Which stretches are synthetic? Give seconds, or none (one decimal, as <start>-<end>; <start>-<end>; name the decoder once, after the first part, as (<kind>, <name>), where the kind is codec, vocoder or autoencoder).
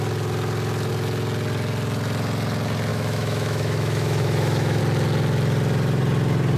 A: 2.9-4.8 (autoencoder, DAC-VAE)